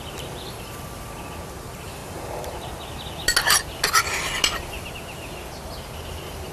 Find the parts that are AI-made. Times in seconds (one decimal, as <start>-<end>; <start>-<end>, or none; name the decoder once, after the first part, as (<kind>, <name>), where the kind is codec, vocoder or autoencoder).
none

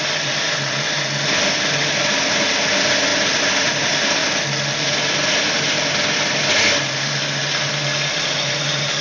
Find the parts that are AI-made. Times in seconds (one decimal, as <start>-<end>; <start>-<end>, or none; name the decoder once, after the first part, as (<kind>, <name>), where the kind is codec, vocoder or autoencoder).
none

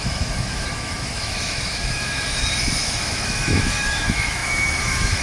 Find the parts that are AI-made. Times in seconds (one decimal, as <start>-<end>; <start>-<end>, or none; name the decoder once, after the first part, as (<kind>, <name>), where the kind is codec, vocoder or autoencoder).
0.0-5.2 (autoencoder, DAC-VAE)